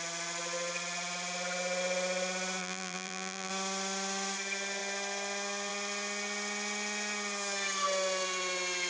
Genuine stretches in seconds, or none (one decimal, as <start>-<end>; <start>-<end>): 0.0-2.6; 3.5-8.9